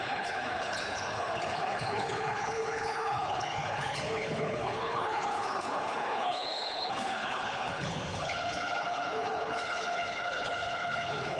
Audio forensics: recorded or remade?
remade